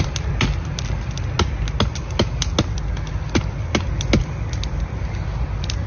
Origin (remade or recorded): recorded